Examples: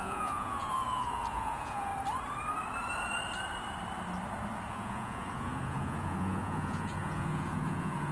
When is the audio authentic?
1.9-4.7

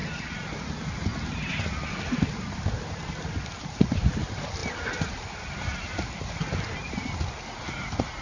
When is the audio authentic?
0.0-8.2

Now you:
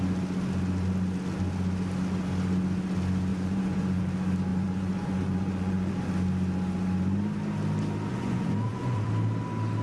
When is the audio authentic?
0.0-3.3; 4.0-4.5; 5.9-8.1; 9.1-9.8

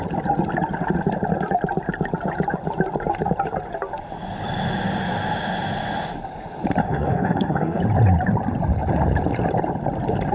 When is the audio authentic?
0.0-6.8; 7.8-10.3

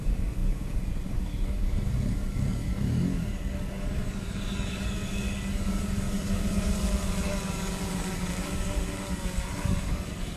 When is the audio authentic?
none